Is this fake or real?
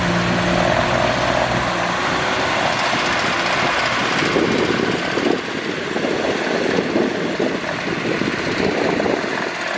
real